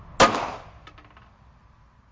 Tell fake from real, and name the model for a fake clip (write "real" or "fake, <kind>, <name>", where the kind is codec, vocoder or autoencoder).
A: real